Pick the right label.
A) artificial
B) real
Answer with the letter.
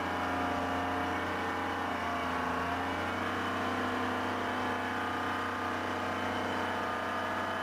B